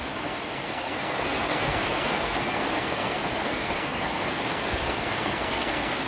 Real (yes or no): no